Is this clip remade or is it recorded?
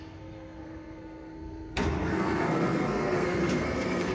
remade